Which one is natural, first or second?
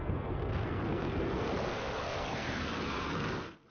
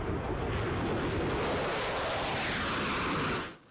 second